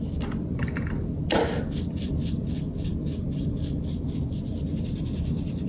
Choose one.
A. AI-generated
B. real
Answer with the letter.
B